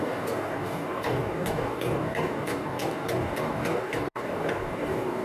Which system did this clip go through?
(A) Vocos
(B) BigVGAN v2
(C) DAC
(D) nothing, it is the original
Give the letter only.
C